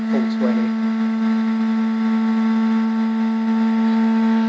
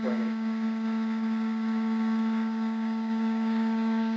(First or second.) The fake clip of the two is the second